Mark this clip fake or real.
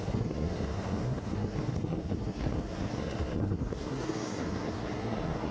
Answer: fake